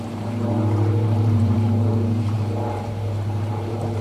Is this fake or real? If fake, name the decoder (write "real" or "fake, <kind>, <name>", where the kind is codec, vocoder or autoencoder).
fake, vocoder, BigVGAN v2